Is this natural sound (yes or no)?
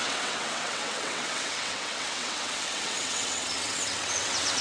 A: no